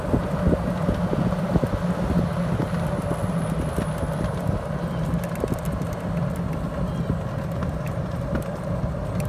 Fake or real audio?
real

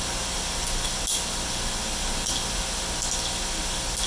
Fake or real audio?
real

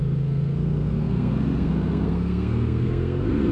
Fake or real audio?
fake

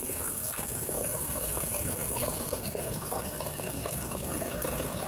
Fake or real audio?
fake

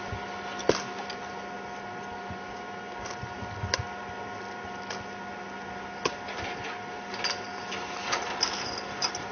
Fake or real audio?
real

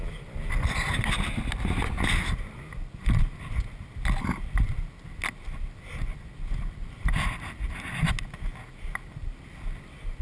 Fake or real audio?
real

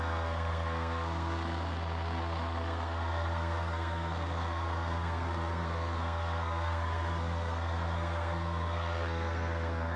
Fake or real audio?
fake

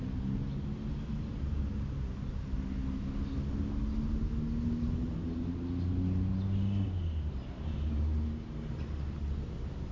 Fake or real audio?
real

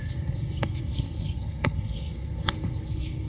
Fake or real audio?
fake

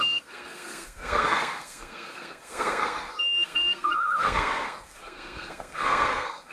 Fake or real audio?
fake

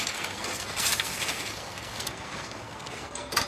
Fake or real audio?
fake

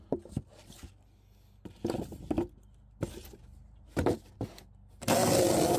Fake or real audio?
real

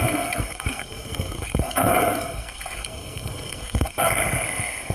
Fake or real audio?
fake